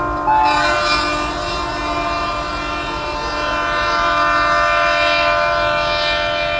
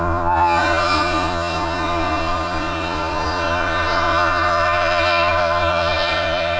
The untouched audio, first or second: first